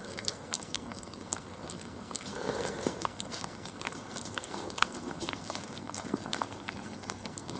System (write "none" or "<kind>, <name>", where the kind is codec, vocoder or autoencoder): codec, SNAC